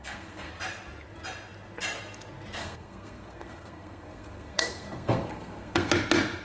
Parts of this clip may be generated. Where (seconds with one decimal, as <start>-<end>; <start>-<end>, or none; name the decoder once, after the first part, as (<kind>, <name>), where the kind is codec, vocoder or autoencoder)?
0.0-0.5 (codec, SNAC); 2.6-5.9